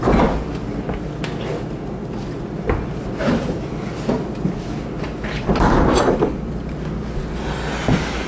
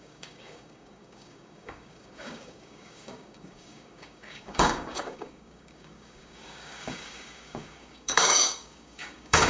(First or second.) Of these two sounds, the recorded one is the first